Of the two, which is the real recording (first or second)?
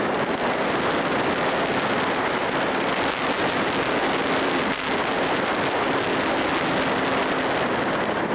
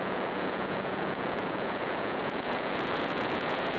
first